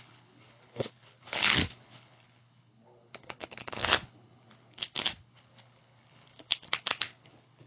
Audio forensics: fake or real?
fake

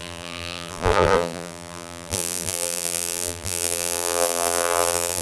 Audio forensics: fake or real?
fake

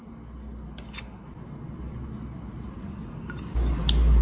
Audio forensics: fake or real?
real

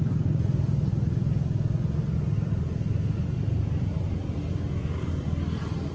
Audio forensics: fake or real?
real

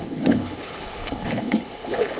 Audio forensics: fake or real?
fake